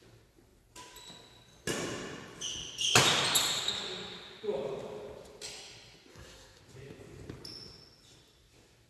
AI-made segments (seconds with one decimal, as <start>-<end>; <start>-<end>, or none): 6.1-6.6